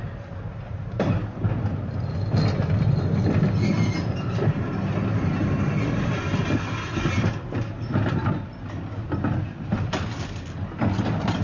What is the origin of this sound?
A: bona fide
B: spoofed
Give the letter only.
A